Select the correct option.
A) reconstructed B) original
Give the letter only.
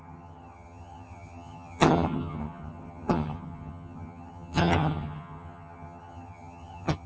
A